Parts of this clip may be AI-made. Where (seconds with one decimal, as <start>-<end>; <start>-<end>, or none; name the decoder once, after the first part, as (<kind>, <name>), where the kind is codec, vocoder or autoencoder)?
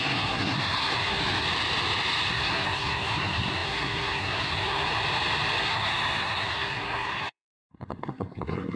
0.0-1.2 (codec, SNAC); 2.3-4.9; 5.6-8.8